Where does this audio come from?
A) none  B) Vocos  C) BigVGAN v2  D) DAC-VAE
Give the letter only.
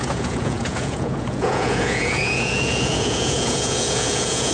B